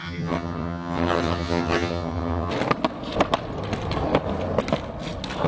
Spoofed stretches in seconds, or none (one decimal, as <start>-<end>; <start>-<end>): 0.0-2.5